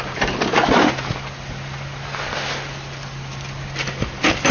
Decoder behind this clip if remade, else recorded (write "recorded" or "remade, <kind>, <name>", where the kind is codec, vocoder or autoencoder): recorded